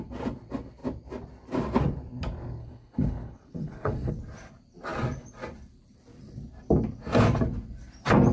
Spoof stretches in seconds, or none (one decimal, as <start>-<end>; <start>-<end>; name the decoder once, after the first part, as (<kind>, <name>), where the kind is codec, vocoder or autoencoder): 2.6-4.1 (codec, HILCodec)